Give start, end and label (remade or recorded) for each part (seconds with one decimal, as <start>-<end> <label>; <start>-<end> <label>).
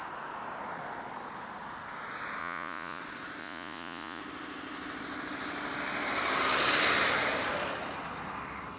0.0-2.4 recorded; 2.4-3.0 remade; 3.0-3.4 recorded; 3.4-4.2 remade; 4.2-8.8 recorded